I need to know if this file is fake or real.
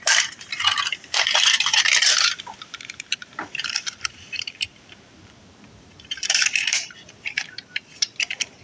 fake